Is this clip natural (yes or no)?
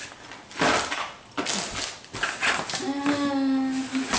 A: yes